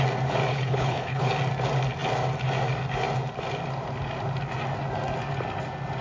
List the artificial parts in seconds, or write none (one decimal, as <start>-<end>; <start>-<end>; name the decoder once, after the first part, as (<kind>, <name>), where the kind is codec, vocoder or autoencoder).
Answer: 0.5-1.3 (codec, HILCodec)